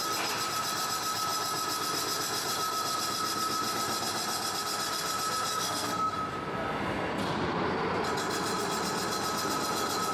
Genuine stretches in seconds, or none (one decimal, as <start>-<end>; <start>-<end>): 0.0-5.5; 6.1-10.1